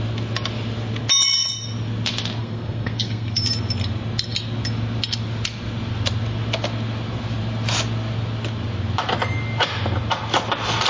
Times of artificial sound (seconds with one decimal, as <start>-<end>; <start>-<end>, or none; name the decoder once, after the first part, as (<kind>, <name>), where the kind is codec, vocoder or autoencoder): 2.4-3.4 (codec, SNAC)